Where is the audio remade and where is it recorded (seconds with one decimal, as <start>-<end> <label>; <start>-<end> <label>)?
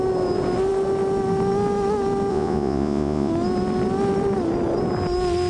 0.0-2.3 recorded; 2.3-3.3 remade; 3.3-5.5 recorded